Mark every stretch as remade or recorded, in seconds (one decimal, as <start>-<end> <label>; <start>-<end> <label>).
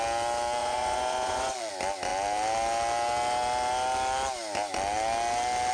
0.0-0.6 recorded; 0.6-1.7 remade; 1.7-5.7 recorded